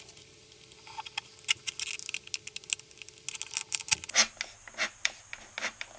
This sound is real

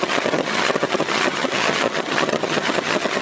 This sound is fake